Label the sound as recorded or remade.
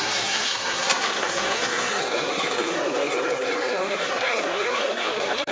remade